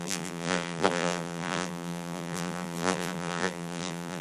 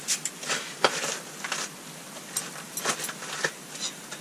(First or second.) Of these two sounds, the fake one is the first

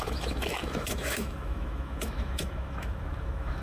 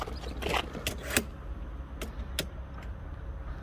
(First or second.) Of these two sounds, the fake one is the first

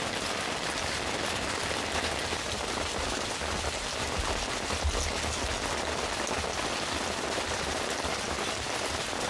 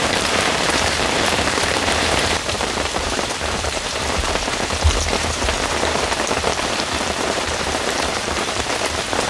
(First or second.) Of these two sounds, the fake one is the second